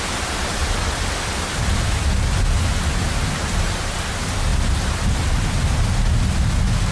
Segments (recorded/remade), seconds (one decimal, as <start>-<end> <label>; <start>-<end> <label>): 0.0-6.9 recorded